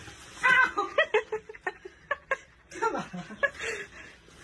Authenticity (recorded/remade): recorded